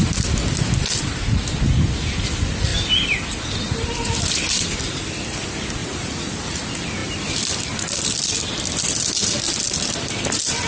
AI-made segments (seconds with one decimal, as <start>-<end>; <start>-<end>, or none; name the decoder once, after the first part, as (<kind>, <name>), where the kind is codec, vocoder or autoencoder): 5.8-6.4 (vocoder, Vocos)